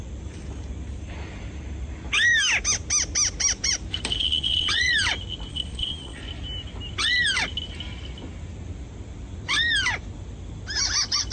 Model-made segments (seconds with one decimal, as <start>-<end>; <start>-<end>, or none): 4.2-4.9; 5.5-6.2